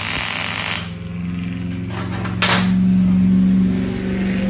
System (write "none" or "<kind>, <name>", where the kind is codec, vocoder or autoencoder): none